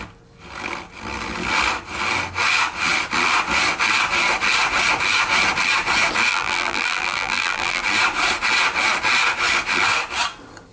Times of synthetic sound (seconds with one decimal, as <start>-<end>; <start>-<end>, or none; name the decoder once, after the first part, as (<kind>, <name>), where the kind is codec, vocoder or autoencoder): 6.3-7.8 (vocoder, BigVGAN v2)